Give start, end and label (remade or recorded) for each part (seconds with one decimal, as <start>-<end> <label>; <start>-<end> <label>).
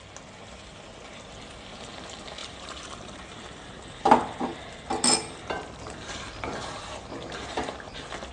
0.0-2.4 recorded; 2.4-4.4 remade; 4.4-8.3 recorded